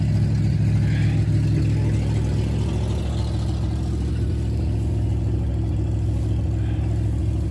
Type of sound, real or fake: real